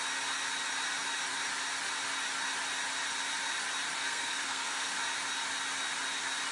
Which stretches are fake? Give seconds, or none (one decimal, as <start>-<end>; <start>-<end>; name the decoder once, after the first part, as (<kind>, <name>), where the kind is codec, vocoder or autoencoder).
4.0-4.9 (codec, SNAC)